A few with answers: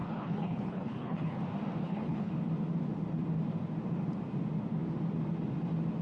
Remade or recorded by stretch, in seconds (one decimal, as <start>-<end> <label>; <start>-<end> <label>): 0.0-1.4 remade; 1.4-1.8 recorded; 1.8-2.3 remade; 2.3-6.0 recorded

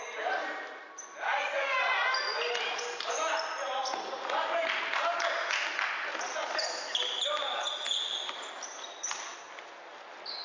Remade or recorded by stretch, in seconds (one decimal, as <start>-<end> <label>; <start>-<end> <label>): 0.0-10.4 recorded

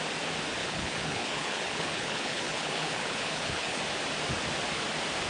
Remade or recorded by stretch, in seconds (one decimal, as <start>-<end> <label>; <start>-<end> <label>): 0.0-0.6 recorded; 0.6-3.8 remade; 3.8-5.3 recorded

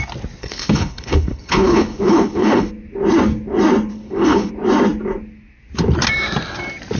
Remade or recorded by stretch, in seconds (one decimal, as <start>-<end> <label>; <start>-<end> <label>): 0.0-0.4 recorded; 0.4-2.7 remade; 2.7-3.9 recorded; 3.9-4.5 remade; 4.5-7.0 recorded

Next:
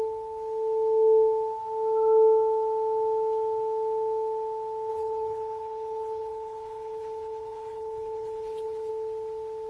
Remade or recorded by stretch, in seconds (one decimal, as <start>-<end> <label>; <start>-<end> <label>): 0.0-4.9 recorded; 4.9-8.9 remade; 8.9-9.7 recorded

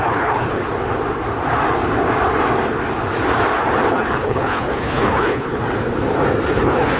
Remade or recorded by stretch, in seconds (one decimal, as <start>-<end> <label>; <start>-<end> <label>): 0.0-0.6 remade; 0.6-3.9 recorded; 3.9-5.6 remade; 5.6-6.5 recorded; 6.5-7.0 remade

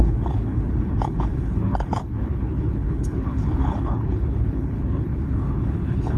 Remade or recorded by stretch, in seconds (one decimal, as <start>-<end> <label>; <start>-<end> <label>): 0.0-6.2 remade